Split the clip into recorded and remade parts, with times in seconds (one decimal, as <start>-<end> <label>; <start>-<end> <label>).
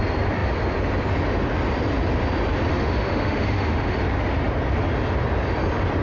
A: 0.0-2.7 recorded; 2.7-4.0 remade; 4.0-6.0 recorded